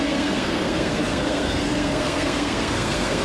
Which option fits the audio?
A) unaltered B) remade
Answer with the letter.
B